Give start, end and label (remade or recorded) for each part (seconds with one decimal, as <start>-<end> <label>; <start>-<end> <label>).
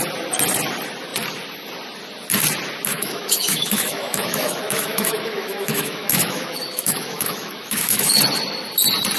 0.0-2.9 recorded; 2.9-8.2 remade; 8.2-9.2 recorded